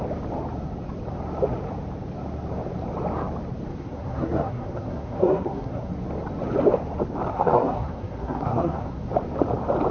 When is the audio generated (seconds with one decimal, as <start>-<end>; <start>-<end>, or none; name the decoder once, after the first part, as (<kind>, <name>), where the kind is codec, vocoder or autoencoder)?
3.7-5.9 (codec, SNAC); 7.3-9.1